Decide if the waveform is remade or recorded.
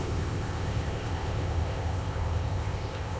remade